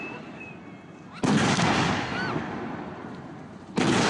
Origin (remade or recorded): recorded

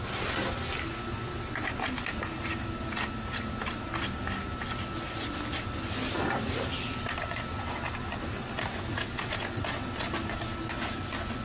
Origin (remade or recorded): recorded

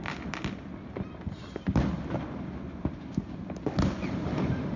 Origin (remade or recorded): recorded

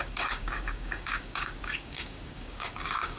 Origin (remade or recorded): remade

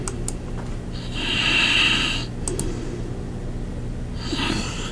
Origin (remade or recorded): recorded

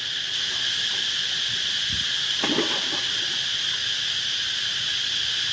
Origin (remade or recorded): recorded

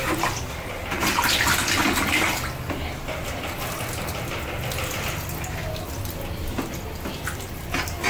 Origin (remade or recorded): recorded